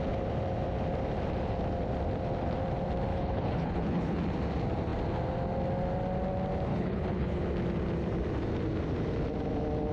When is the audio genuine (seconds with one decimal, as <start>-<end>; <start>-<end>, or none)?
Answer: 0.0-3.1; 4.2-6.7; 7.4-9.9